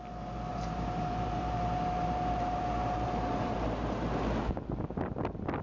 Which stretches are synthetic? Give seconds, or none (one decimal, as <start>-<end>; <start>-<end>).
0.5-3.8